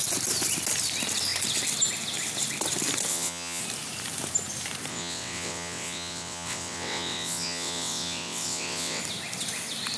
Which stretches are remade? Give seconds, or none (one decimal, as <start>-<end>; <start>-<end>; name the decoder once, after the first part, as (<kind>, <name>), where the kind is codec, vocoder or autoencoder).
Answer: 3.1-3.6 (vocoder, WaveNeXt); 4.9-9.0